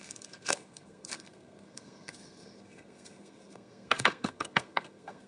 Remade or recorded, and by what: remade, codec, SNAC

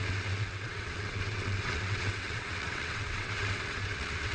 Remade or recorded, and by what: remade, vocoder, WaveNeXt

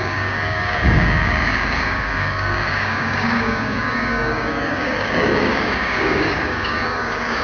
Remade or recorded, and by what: remade, codec, DAC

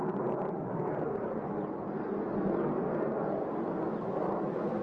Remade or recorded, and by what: recorded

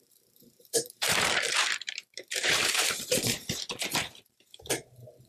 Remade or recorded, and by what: remade, vocoder, BigVGAN v2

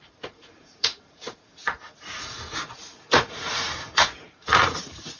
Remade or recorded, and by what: remade, vocoder, Vocos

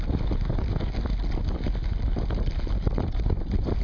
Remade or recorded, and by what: recorded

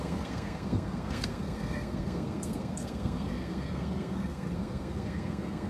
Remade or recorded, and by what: remade, codec, SNAC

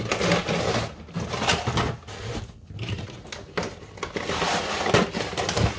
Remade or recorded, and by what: recorded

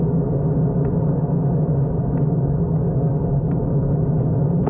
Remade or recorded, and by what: recorded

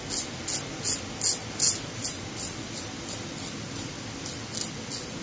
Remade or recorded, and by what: recorded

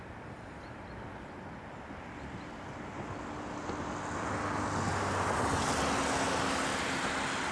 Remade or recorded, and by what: recorded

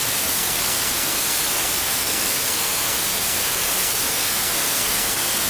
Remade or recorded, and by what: remade, codec, SNAC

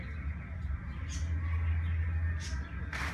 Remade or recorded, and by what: recorded